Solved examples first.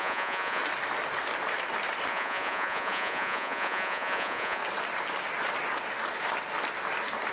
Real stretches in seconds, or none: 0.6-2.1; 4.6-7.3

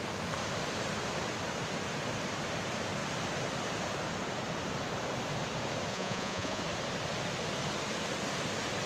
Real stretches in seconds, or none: 0.0-5.9; 6.6-8.9

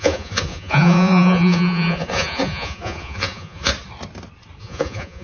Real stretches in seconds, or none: 3.7-4.6